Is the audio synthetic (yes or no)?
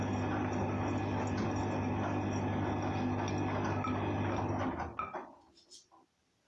no